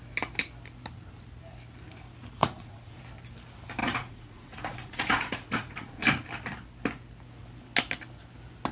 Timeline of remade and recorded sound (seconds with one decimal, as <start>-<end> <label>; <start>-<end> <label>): 0.0-2.4 recorded; 2.4-3.0 remade; 3.0-3.8 recorded; 3.8-6.0 remade; 6.0-8.7 recorded